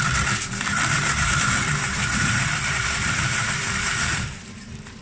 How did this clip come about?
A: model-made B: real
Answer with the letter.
A